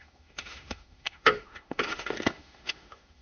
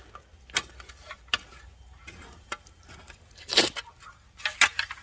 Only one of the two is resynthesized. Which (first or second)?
first